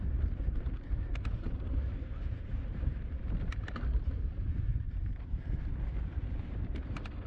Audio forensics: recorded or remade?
remade